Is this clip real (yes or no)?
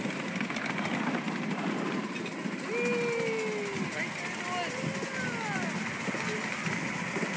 yes